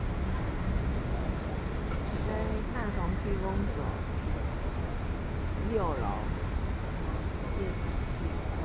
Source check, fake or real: real